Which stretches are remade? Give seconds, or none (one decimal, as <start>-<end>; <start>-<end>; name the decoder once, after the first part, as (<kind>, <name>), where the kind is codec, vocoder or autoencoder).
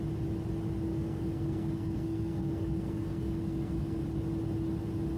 0.9-4.0 (codec, SNAC)